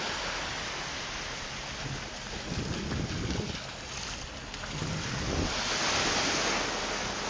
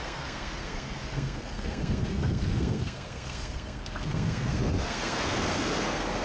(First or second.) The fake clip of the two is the second